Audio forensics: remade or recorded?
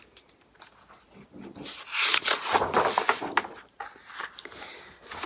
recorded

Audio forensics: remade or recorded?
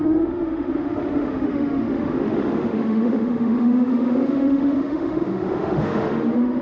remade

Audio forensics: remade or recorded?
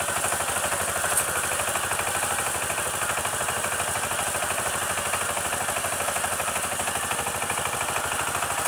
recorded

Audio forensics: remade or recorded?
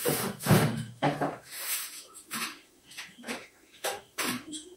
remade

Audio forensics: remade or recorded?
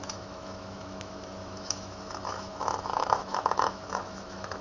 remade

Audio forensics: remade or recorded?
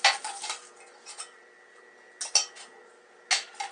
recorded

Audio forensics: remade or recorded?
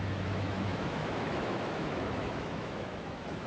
remade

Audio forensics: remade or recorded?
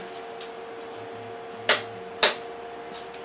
recorded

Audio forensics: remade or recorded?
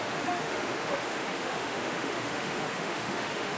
remade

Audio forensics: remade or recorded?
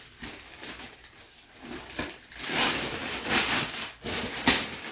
recorded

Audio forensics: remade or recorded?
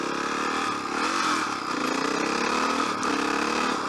recorded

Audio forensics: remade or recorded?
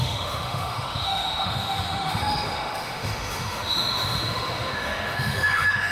remade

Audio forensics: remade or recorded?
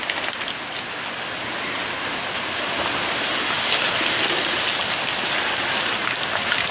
recorded